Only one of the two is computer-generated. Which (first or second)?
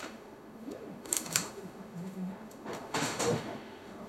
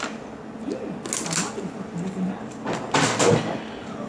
first